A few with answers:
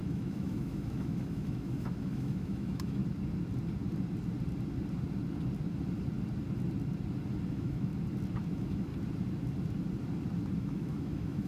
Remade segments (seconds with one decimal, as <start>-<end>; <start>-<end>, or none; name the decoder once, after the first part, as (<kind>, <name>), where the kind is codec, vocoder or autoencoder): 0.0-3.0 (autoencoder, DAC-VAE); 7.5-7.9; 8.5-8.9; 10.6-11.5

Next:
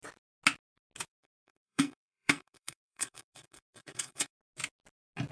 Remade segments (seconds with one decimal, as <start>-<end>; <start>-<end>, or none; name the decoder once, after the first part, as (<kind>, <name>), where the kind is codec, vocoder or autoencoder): 1.1-4.3 (codec, SNAC)

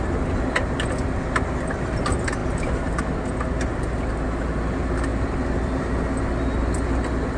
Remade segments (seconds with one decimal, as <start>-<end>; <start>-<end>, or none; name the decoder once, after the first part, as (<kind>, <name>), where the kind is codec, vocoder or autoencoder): none

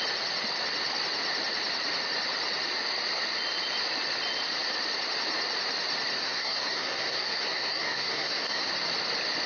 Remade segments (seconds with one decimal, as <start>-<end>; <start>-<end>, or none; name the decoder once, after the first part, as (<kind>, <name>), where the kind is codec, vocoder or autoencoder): 6.2-8.7 (codec, SNAC)